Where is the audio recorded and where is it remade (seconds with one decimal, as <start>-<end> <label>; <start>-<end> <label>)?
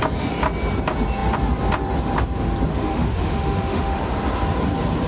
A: 0.0-2.7 recorded; 2.7-4.0 remade; 4.0-5.1 recorded